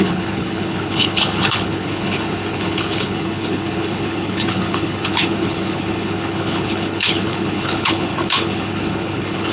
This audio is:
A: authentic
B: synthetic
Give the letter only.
B